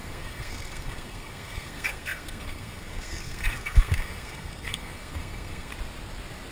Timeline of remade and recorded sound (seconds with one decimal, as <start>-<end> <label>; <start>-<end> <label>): 0.0-5.7 remade; 5.7-6.5 recorded